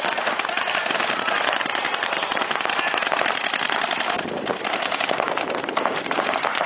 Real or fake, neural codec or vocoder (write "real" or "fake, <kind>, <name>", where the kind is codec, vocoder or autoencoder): real